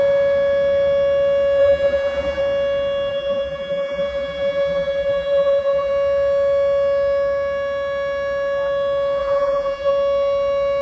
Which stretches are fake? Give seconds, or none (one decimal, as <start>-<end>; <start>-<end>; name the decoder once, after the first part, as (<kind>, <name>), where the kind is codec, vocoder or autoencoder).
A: 1.6-2.4 (vocoder, BigVGAN v2); 3.1-5.9; 9.2-9.9